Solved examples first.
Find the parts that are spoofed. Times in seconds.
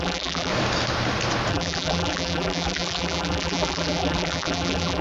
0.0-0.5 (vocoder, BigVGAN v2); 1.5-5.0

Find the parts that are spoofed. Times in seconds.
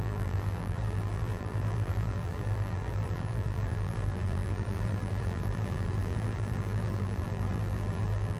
0.0-8.4 (vocoder, BigVGAN v2)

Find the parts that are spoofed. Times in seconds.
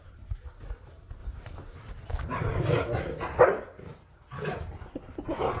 3.9-4.7 (vocoder, BigVGAN v2)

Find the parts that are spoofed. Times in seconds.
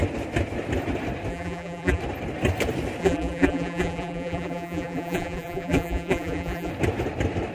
1.3-2.0 (vocoder, BigVGAN v2); 3.0-6.7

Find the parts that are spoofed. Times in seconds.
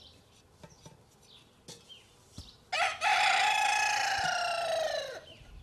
0.0-2.7 (vocoder, BigVGAN v2); 4.4-5.6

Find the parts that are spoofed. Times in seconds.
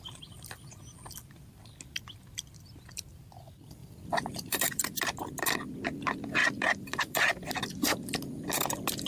3.8-5.0 (vocoder, BigVGAN v2); 6.4-7.5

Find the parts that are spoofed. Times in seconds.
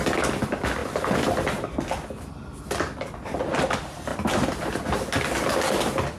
4.1-5.0 (vocoder, BigVGAN v2)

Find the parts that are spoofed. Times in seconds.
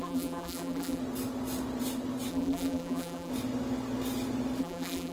0.0-1.0 (vocoder, BigVGAN v2); 2.3-3.3; 4.6-5.1